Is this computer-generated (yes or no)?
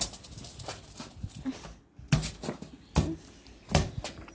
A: no